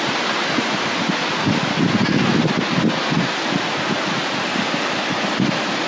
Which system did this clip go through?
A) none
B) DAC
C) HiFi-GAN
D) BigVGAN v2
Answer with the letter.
A